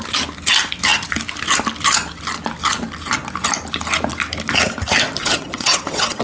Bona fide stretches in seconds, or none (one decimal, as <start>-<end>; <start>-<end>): 0.0-5.2